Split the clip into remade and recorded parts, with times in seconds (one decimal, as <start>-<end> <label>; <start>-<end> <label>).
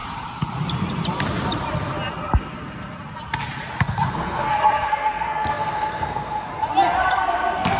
0.0-3.8 recorded; 3.8-6.5 remade; 6.5-7.1 recorded; 7.1-7.8 remade